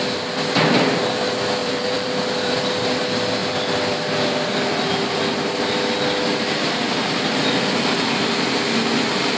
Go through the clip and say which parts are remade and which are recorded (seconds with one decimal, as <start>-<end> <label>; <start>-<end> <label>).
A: 0.0-1.6 recorded; 1.6-2.6 remade; 2.6-3.4 recorded; 3.4-5.1 remade; 5.1-9.4 recorded